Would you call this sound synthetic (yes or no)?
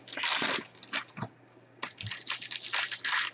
no